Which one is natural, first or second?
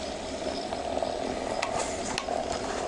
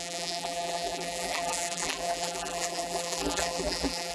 first